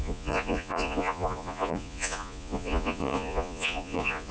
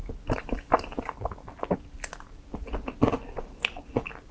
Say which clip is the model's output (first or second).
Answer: first